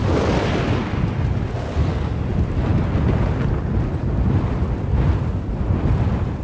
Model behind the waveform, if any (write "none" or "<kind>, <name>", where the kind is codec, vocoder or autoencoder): none